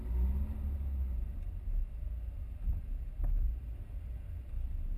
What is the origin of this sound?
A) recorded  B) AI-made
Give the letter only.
A